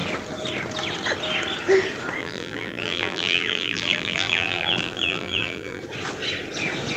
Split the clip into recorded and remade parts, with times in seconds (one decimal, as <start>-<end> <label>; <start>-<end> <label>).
0.0-2.2 recorded; 2.2-5.8 remade; 5.8-7.0 recorded